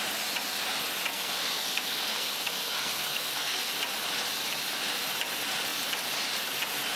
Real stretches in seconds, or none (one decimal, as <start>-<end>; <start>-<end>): 0.0-1.1; 3.7-7.0